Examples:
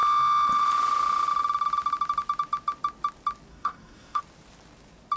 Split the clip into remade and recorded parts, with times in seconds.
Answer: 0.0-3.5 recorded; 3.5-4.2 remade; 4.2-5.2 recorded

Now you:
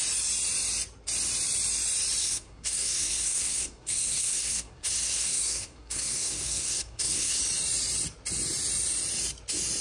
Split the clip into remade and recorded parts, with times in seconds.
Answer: 0.0-2.2 recorded; 2.2-7.4 remade; 7.4-9.8 recorded